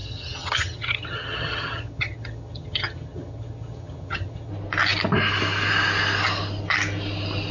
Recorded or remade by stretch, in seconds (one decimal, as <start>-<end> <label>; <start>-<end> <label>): 0.0-4.5 remade; 4.5-7.5 recorded